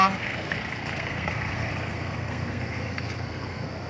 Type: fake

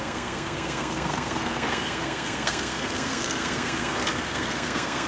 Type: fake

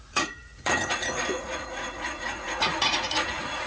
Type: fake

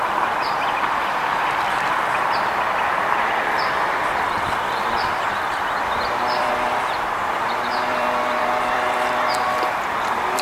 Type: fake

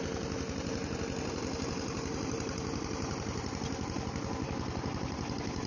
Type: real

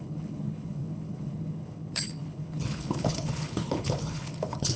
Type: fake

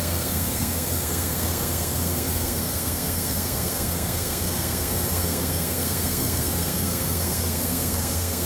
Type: fake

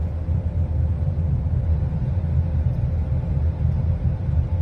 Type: real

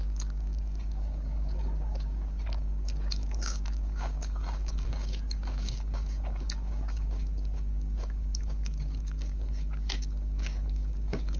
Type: fake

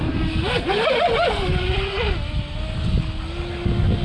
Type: real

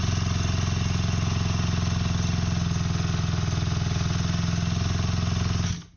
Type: real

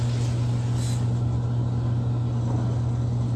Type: real